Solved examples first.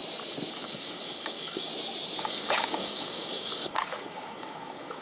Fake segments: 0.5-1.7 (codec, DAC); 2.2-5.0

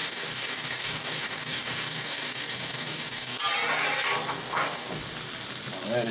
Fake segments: 0.0-3.4 (codec, DAC); 4.3-5.0

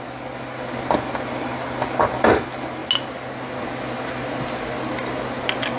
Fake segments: none

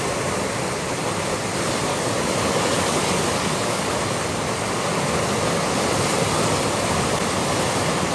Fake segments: 1.9-3.9 (codec, DAC)

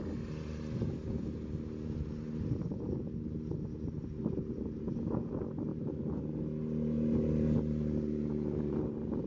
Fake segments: none